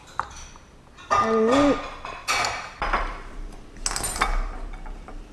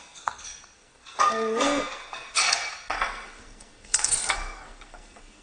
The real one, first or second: first